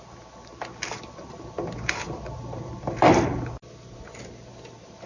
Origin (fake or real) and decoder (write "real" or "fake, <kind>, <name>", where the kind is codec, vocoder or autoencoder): real